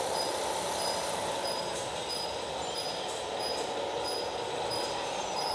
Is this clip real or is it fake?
real